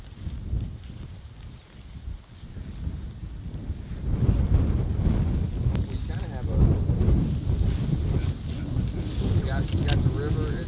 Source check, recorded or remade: recorded